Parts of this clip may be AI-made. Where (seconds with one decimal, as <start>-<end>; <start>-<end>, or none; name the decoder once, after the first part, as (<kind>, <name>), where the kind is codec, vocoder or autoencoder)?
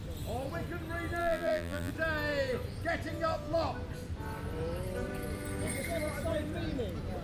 1.2-1.9 (vocoder, BigVGAN v2)